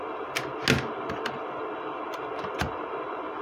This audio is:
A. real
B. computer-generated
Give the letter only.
A